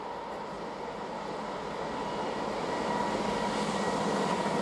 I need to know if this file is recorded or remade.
recorded